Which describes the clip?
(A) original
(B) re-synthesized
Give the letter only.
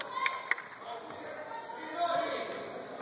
A